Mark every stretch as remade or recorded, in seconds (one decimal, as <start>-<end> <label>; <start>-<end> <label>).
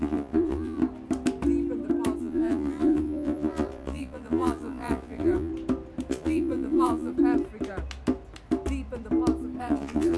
0.0-0.8 remade; 0.8-2.2 recorded; 2.2-5.5 remade; 5.5-6.1 recorded; 6.1-7.1 remade; 7.1-9.6 recorded; 9.6-10.2 remade